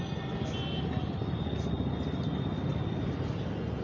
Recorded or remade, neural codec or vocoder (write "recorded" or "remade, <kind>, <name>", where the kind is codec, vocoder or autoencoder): recorded